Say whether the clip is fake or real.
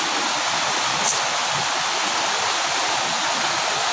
real